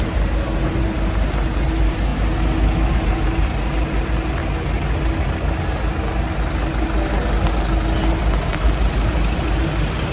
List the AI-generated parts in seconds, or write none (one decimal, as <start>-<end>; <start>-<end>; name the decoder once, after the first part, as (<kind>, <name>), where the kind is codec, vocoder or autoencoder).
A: 0.0-2.1 (vocoder, BigVGAN v2); 2.9-4.4; 8.1-10.1